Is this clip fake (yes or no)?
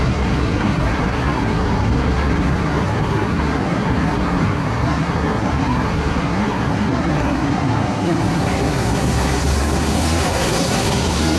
yes